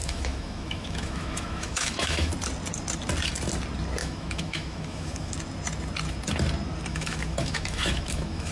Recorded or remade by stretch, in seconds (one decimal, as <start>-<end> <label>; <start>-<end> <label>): 0.0-2.3 remade; 2.3-4.0 recorded; 4.0-5.3 remade; 5.3-6.9 recorded; 6.9-8.5 remade